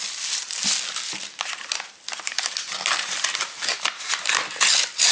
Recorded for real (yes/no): yes